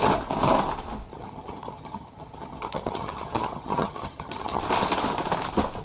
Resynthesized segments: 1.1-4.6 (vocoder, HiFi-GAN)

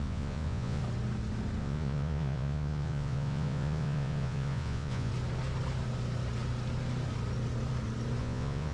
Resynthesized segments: 0.0-0.8 (vocoder, Vocos); 1.6-5.1; 8.2-8.7

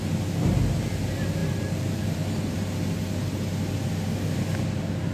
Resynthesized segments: none

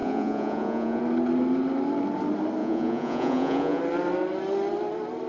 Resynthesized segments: 0.0-1.0 (vocoder, Vocos); 2.6-3.8